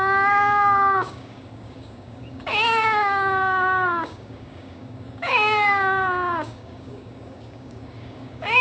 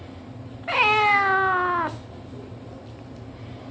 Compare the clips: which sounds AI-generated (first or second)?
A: first